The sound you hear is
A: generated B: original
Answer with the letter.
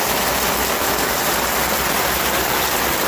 B